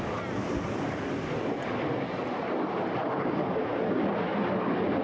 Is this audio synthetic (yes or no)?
no